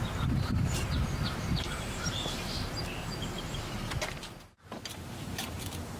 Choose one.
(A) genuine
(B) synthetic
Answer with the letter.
B